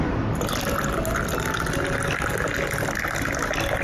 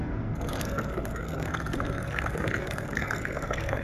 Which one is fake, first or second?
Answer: second